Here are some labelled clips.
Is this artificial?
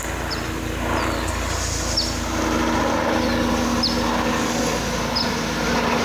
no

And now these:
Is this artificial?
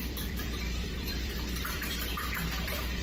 yes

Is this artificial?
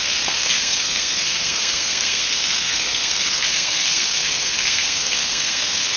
yes